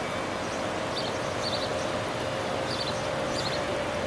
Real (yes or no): yes